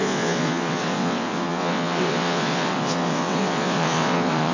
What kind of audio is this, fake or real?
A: fake